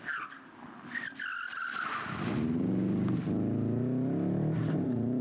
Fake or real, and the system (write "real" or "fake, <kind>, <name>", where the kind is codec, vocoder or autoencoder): real